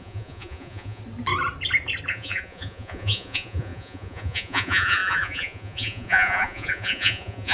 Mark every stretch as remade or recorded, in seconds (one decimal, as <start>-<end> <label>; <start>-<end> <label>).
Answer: 0.0-1.0 remade; 1.0-2.1 recorded; 2.1-7.5 remade